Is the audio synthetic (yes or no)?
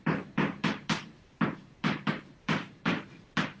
yes